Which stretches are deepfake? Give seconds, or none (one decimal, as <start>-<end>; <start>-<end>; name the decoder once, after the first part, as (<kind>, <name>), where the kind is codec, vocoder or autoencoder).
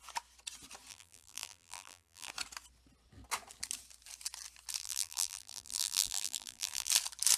0.9-2.3 (vocoder, BigVGAN v2); 4.8-6.9